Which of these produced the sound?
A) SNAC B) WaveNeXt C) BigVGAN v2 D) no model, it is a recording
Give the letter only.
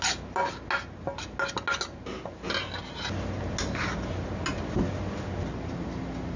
D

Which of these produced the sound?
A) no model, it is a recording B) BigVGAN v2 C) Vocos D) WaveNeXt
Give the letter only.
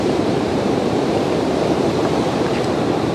B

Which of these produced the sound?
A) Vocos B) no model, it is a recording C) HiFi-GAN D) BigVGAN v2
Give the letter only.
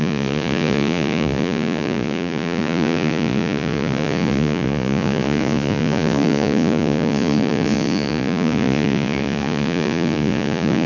A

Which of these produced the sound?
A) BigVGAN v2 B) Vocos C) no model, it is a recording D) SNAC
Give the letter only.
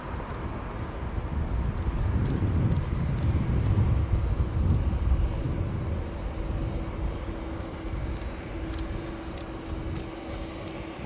C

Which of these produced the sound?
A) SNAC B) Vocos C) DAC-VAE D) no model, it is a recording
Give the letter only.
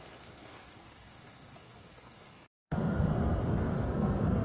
A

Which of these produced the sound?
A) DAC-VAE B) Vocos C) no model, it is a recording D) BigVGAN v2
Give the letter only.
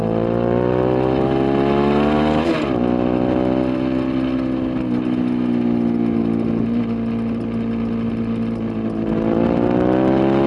C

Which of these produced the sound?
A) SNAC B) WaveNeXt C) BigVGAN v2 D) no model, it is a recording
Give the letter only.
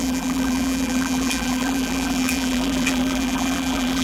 C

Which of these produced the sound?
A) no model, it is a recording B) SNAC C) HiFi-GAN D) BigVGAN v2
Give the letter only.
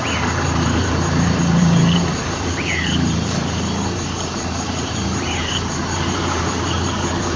D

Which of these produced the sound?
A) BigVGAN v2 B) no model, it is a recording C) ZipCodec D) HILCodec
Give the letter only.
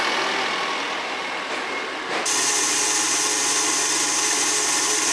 B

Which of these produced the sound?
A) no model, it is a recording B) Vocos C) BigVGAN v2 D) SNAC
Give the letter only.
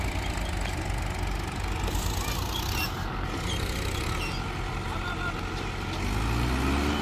A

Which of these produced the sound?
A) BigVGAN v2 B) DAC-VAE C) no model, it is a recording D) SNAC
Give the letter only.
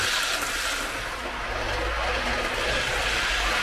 C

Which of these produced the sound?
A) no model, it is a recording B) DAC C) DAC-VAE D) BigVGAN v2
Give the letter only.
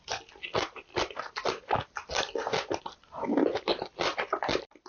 A